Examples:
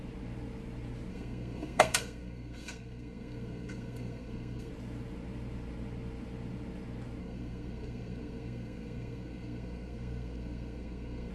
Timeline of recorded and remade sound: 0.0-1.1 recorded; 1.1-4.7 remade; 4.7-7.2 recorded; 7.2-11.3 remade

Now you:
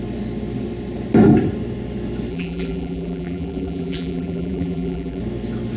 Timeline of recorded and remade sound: 0.0-2.3 recorded; 2.3-5.2 remade; 5.2-5.8 recorded

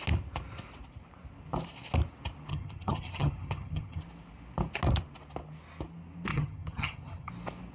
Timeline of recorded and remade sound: 0.0-2.5 recorded; 2.5-4.0 remade; 4.0-6.3 recorded; 6.3-7.3 remade; 7.3-7.7 recorded

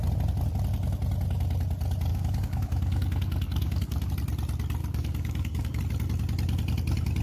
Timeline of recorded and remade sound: 0.0-2.1 recorded; 2.1-4.1 remade; 4.1-4.8 recorded; 4.8-5.8 remade; 5.8-7.2 recorded

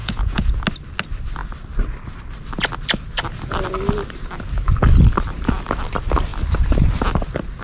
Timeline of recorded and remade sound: 0.0-0.6 remade; 0.6-7.6 recorded

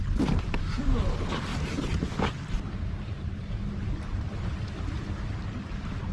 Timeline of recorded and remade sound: 0.0-6.1 recorded

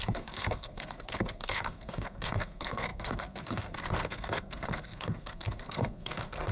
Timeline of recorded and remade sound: 0.0-6.5 remade

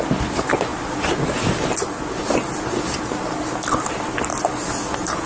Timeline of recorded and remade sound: 0.0-5.3 recorded